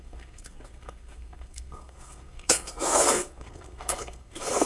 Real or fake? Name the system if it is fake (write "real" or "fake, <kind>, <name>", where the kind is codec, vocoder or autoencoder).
fake, codec, SNAC